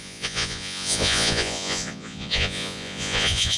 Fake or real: fake